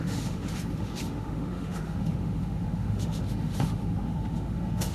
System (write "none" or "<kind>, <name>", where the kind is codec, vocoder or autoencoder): autoencoder, DAC-VAE